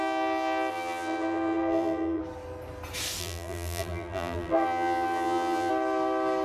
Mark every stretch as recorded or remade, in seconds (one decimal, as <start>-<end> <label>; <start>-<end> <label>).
0.0-0.7 recorded; 0.7-2.2 remade; 2.2-3.2 recorded; 3.2-5.7 remade; 5.7-6.4 recorded